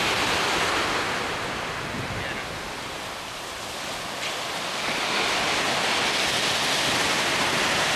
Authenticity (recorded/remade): recorded